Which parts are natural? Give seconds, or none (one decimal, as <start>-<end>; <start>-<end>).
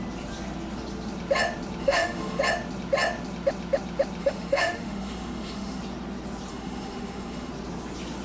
0.0-1.8; 2.4-4.2; 5.8-6.5; 7.5-8.2